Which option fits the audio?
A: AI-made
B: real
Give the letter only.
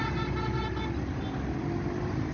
B